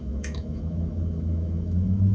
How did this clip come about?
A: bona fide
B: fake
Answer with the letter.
B